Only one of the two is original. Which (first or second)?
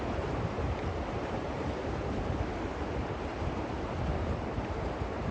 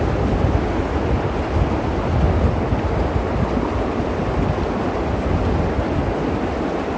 second